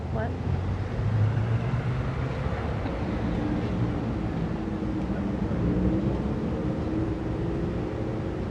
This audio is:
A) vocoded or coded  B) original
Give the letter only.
B